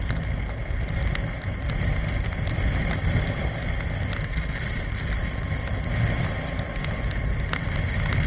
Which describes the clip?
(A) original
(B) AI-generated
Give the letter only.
A